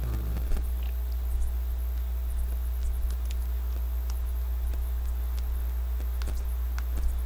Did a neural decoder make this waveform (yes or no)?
no